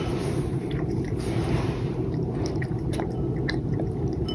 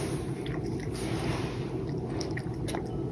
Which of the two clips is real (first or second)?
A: second